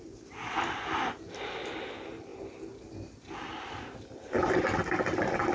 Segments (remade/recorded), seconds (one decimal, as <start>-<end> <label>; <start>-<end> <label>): 0.0-5.5 recorded